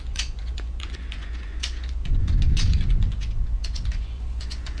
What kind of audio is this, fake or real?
fake